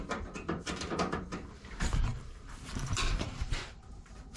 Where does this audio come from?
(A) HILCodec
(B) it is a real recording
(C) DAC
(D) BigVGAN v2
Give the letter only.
D